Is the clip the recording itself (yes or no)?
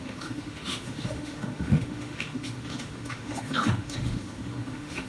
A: no